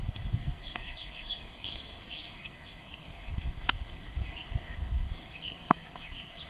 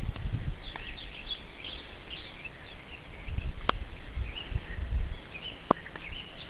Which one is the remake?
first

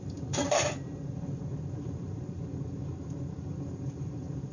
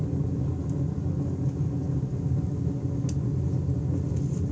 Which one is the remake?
first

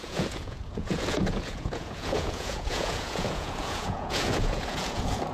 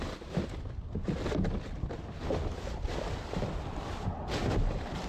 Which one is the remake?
first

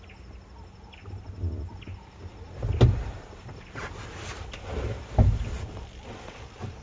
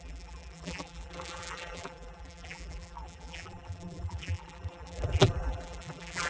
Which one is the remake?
second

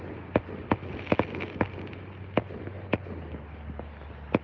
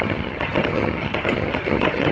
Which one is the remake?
second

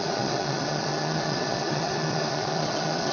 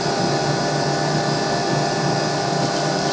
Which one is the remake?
first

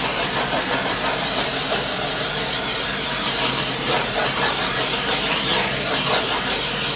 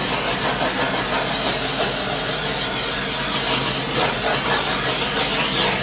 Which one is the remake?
first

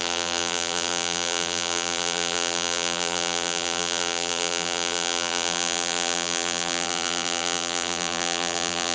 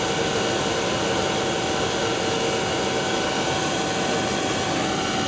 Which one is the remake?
first